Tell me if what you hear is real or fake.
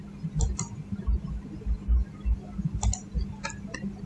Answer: real